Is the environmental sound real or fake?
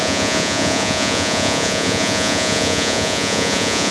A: fake